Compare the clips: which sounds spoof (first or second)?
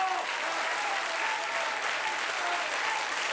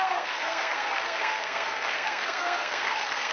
second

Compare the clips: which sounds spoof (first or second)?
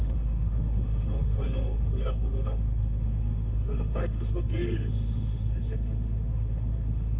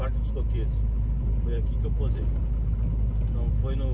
first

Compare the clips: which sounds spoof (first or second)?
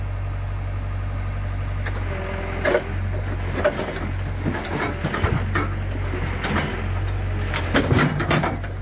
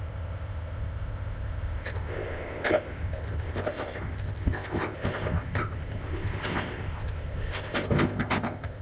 second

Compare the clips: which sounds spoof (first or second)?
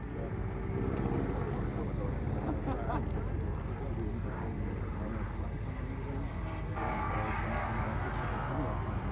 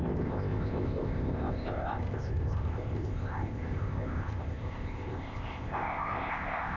second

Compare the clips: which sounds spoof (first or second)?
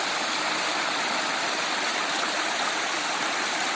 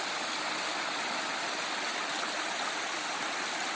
first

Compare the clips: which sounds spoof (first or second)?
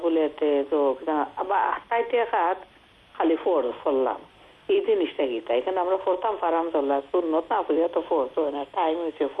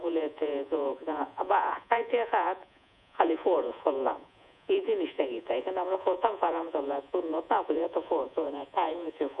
second